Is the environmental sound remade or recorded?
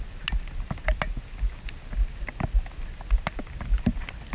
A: recorded